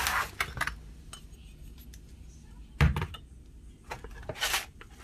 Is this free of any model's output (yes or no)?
yes